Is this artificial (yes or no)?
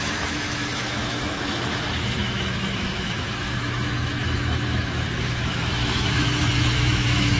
yes